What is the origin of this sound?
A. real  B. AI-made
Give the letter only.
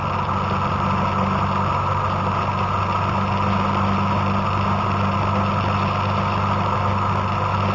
A